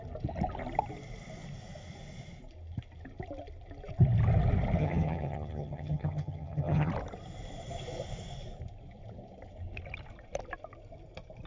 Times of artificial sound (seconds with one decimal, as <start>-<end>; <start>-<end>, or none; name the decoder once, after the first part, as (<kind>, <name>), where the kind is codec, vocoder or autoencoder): 4.8-6.9 (vocoder, HiFi-GAN)